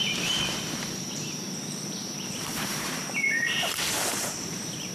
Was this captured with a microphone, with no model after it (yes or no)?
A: no